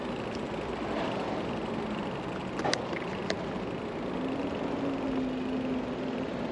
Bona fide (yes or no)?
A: yes